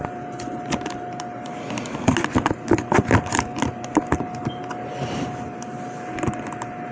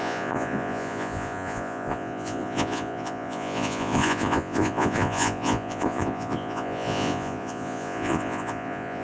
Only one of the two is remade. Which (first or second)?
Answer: second